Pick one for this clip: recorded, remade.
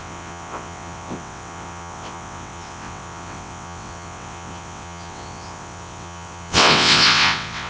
remade